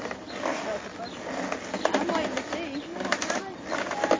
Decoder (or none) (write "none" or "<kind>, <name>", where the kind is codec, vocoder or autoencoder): none